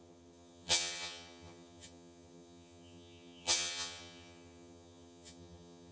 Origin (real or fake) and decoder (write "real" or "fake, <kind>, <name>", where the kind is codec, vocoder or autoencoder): fake, vocoder, HiFi-GAN